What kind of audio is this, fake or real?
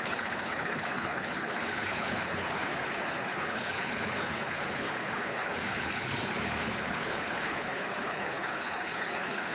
fake